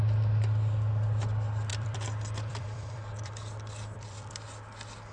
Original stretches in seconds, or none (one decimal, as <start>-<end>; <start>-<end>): 0.0-1.7; 4.3-5.1